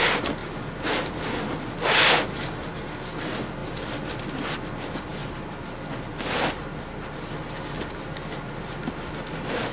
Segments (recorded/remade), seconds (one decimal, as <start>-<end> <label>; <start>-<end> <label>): 0.0-9.7 recorded